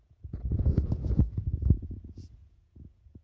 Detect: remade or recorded remade